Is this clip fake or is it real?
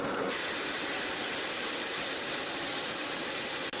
fake